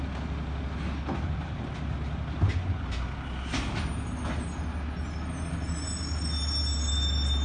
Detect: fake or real real